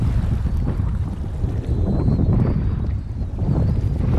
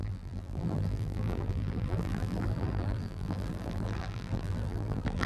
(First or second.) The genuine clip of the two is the first